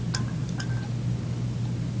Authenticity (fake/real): real